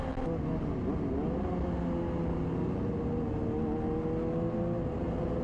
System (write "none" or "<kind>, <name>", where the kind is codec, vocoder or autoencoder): none